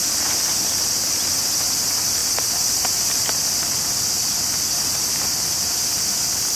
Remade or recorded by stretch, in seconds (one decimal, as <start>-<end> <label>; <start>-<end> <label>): 0.0-6.6 recorded